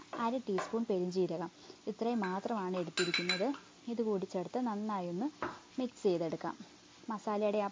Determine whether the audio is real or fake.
real